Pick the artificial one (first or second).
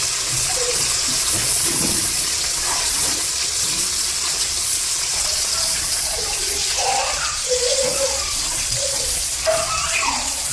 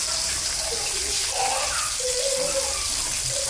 first